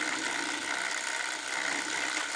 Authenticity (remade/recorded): recorded